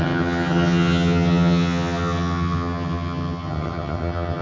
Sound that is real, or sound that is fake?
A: fake